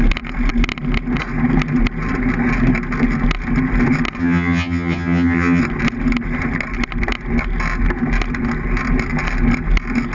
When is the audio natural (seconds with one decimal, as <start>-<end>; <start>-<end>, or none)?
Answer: 0.0-4.2; 5.6-10.1